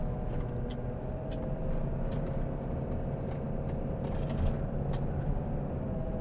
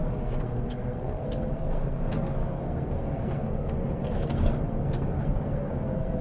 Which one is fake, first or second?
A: second